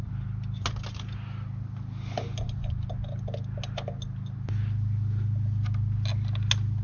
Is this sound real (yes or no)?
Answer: yes